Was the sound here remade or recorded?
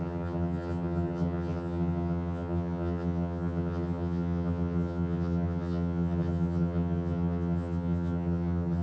remade